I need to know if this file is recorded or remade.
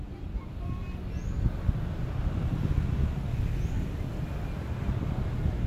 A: recorded